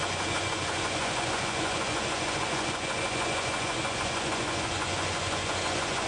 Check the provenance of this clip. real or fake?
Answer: fake